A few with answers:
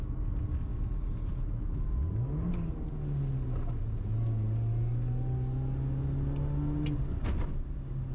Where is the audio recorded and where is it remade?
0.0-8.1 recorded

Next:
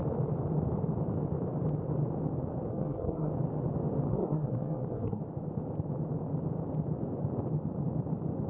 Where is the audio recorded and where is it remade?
0.0-2.7 recorded; 2.7-3.3 remade; 3.3-4.1 recorded; 4.1-5.2 remade; 5.2-8.5 recorded

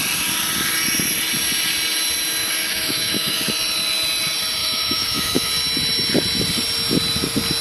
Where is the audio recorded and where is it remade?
0.0-2.4 recorded; 2.4-3.5 remade; 3.5-4.6 recorded; 4.6-5.5 remade; 5.5-7.6 recorded

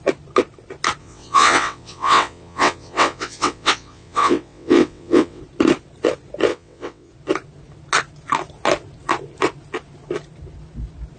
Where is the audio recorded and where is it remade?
0.0-1.0 recorded; 1.0-5.4 remade; 5.4-6.5 recorded; 6.5-7.1 remade; 7.1-11.2 recorded

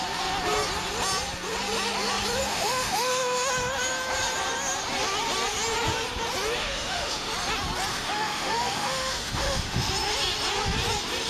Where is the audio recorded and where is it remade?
0.0-2.5 recorded; 2.5-3.5 remade; 3.5-6.6 recorded; 6.6-7.3 remade; 7.3-7.9 recorded; 7.9-9.9 remade; 9.9-11.3 recorded

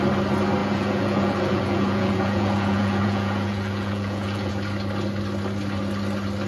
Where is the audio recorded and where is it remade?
0.0-0.6 recorded; 0.6-4.5 remade; 4.5-6.5 recorded